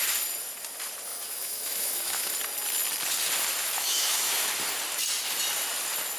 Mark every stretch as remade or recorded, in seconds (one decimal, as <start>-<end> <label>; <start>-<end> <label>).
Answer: 0.0-1.1 recorded; 1.1-2.3 remade; 2.3-3.6 recorded; 3.6-4.5 remade; 4.5-6.2 recorded